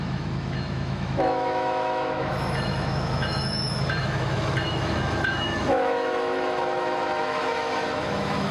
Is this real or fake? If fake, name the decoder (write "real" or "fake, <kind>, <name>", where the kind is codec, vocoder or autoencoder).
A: fake, autoencoder, DAC-VAE